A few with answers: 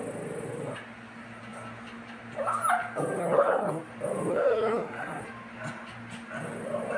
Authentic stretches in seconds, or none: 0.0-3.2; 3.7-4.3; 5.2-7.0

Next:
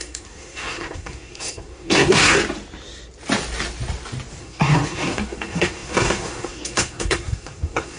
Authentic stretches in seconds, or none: 2.4-4.4